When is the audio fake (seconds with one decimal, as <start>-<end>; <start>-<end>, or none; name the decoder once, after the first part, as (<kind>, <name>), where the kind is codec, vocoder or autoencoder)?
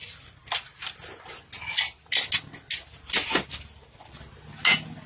none